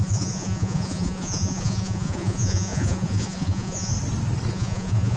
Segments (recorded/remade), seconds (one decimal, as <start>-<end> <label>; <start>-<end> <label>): 0.0-3.9 remade; 3.9-4.5 recorded; 4.5-5.2 remade

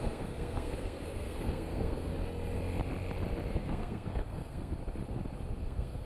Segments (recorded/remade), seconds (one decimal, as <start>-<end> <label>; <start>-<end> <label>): 0.0-2.1 remade; 2.1-3.5 recorded; 3.5-4.8 remade; 4.8-5.6 recorded; 5.6-6.1 remade

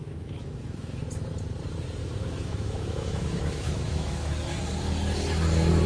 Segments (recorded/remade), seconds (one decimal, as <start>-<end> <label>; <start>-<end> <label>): 0.0-1.0 remade; 1.0-2.0 recorded; 2.0-4.3 remade; 4.3-5.9 recorded